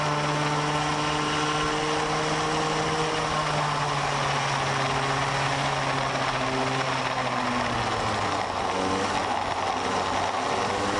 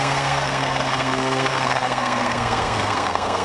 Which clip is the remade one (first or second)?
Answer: second